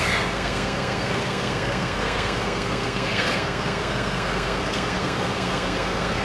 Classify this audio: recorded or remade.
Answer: remade